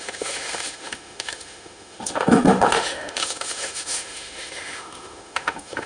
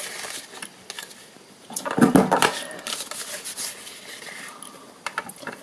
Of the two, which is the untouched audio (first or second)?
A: second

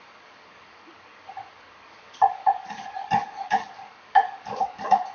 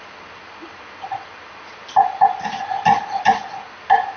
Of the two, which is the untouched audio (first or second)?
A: second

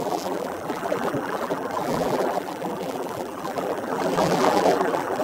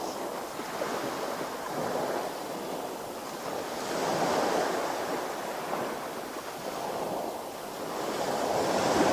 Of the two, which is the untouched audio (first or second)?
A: second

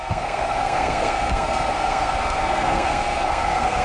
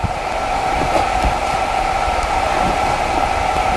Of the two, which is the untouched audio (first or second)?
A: second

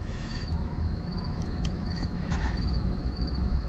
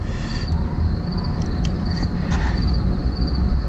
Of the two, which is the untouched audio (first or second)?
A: second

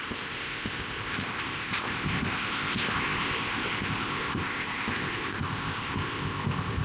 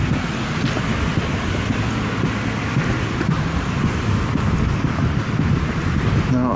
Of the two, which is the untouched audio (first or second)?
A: second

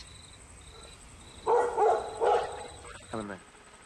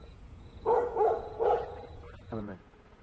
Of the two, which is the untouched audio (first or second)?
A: first